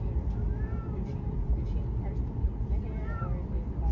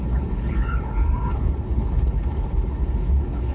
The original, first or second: first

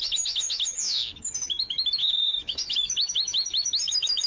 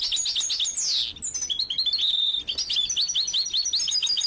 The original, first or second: second